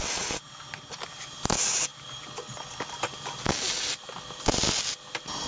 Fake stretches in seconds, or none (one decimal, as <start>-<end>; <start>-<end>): none